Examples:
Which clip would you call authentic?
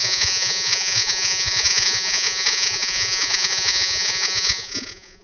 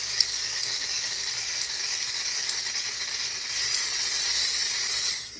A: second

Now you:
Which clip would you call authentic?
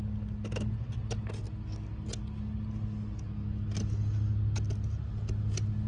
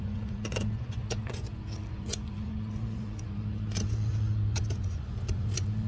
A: first